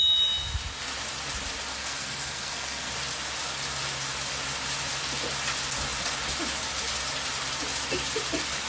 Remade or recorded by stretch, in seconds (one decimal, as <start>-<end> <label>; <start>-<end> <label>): 0.0-1.8 recorded; 1.8-2.9 remade; 2.9-8.7 recorded